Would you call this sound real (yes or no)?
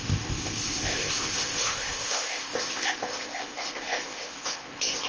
no